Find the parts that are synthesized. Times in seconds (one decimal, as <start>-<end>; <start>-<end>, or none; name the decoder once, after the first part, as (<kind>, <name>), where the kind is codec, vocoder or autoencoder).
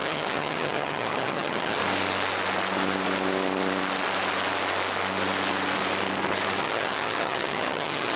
0.0-1.8 (vocoder, HiFi-GAN); 6.6-8.2